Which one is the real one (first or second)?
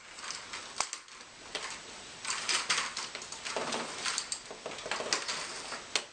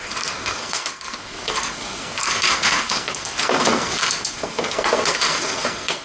first